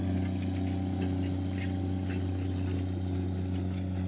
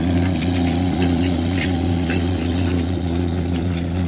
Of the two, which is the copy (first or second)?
second